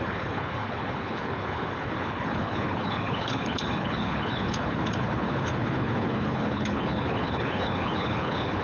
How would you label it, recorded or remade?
remade